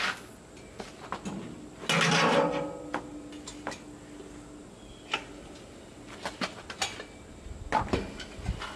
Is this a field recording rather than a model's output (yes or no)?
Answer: yes